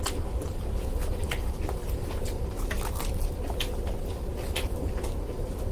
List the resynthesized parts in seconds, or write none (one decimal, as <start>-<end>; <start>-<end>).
none